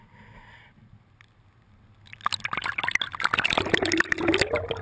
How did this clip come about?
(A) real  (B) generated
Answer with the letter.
A